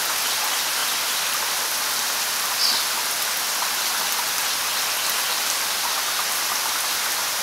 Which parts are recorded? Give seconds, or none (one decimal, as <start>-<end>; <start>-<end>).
0.0-7.4

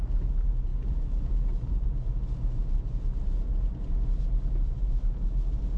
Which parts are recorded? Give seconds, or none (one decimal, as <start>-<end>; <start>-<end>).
0.0-5.8

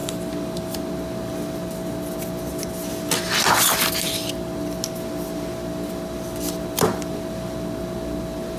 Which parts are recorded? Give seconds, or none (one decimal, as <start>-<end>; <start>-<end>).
0.0-8.6

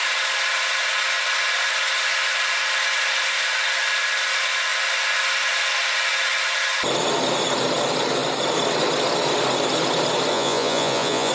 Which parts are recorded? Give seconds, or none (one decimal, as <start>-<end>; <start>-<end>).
0.0-10.3

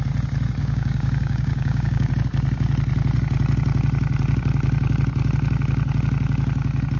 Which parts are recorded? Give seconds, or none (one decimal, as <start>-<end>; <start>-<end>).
0.0-0.6; 2.1-7.0

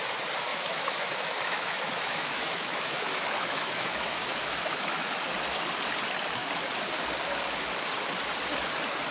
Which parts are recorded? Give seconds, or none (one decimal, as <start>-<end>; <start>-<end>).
0.0-0.5; 5.2-9.1